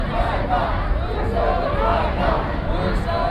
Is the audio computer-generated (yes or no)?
no